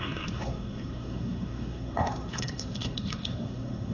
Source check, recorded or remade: remade